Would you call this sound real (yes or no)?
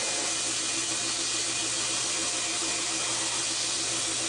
yes